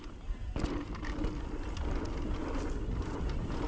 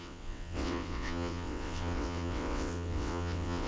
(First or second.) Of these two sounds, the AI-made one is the second